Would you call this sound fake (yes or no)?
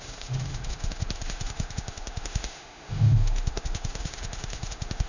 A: yes